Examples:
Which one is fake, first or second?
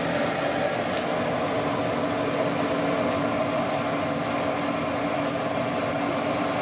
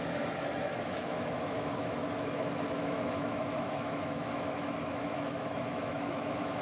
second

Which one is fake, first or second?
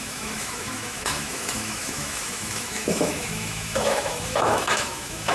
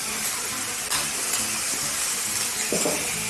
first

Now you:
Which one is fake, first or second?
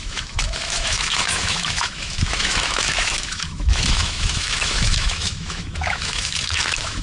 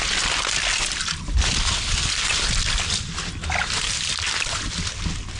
first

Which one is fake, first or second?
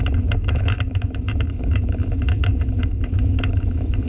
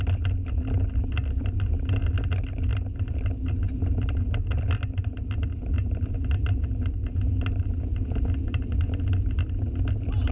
first